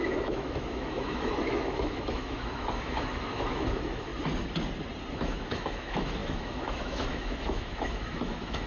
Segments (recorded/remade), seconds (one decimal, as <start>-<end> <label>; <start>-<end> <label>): 0.0-4.1 remade; 4.1-5.1 recorded; 5.1-8.7 remade